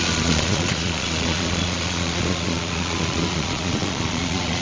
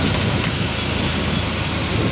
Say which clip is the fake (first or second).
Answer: first